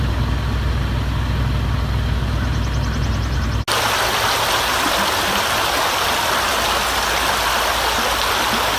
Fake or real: real